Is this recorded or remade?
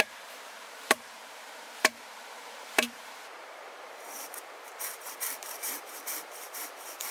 remade